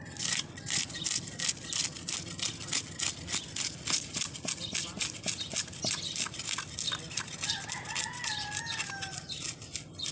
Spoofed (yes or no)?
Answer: no